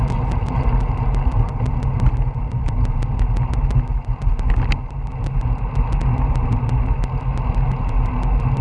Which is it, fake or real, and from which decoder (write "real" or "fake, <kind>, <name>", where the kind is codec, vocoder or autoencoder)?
real